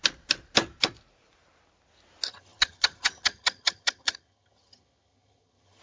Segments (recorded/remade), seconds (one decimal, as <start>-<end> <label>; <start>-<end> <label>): 0.0-2.3 recorded; 2.3-5.8 remade